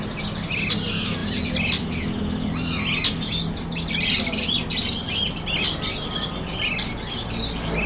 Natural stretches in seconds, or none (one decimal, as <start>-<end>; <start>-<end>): 0.0-7.9